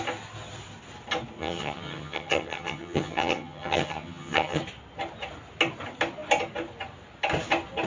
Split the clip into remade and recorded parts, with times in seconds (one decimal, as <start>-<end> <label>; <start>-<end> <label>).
0.0-1.4 recorded; 1.4-4.6 remade; 4.6-7.9 recorded